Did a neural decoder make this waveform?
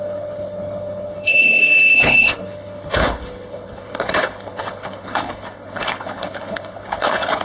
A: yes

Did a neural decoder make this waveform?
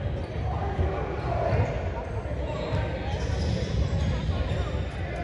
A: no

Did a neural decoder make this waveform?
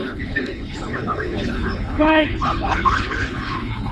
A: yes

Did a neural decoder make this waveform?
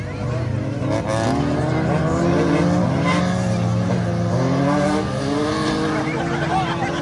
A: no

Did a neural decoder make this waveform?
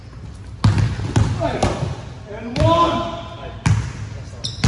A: no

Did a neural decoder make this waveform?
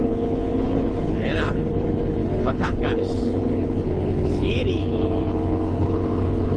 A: yes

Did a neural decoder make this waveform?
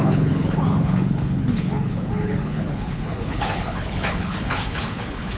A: yes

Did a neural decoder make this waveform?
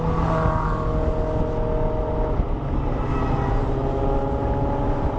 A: no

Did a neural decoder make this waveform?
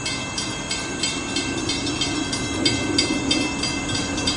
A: no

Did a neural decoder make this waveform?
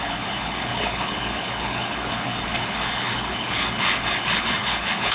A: yes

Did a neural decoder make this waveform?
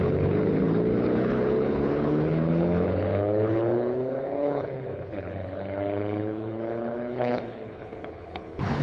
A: yes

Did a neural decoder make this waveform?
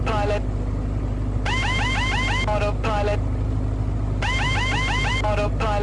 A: no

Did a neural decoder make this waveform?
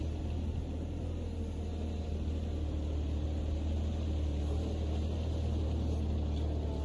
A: no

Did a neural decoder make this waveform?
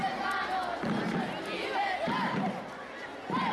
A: no